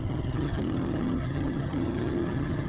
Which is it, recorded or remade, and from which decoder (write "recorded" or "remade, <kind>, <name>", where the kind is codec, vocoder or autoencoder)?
remade, vocoder, HiFi-GAN